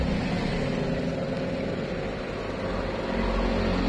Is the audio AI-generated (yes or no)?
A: no